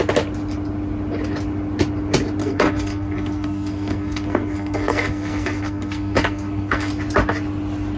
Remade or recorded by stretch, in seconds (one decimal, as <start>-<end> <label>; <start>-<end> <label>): 0.0-2.4 recorded; 2.4-6.9 remade; 6.9-8.0 recorded